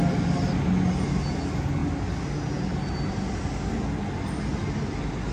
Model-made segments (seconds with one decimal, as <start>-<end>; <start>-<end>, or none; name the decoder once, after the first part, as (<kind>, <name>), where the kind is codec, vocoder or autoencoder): none